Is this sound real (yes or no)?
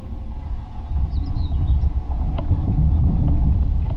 no